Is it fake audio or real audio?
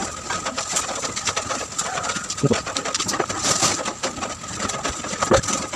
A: fake